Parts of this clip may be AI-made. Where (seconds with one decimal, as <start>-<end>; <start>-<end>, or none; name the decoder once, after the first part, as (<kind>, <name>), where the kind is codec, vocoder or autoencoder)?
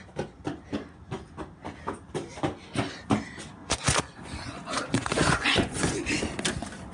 3.6-6.2 (vocoder, Vocos)